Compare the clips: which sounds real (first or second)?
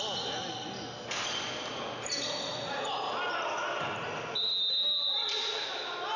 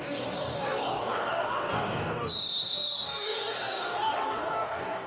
first